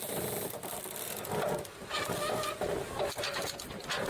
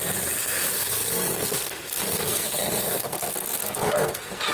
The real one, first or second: first